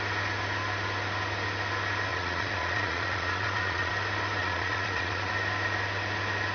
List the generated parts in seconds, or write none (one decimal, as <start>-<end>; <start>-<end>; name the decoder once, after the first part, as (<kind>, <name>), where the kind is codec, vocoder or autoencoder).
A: 2.1-3.9 (vocoder, Vocos); 4.4-5.3